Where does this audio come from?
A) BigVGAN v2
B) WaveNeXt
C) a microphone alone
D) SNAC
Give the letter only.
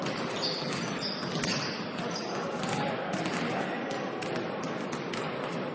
C